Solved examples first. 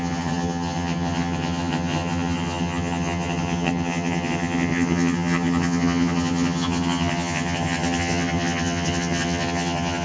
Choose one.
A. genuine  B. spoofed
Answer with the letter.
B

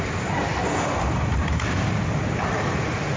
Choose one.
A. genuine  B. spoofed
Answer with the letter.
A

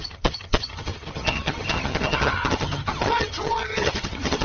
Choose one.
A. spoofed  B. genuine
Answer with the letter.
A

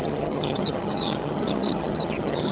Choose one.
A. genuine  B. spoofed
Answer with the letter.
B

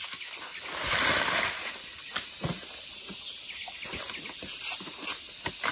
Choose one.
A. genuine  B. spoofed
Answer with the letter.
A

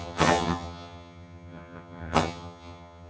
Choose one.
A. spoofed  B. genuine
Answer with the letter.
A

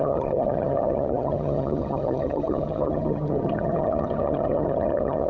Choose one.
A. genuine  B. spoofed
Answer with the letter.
B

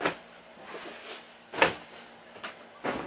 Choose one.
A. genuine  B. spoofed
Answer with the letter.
A